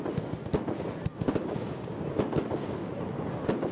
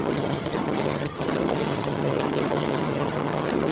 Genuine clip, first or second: first